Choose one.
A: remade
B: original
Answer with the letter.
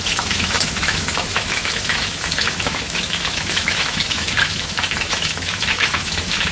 A